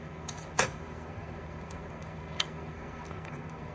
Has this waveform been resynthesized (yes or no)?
yes